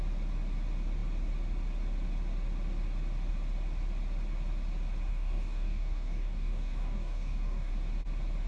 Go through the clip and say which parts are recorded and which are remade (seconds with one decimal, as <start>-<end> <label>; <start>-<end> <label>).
0.0-5.1 recorded; 5.1-7.7 remade; 7.7-8.5 recorded